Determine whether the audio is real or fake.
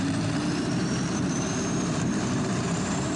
fake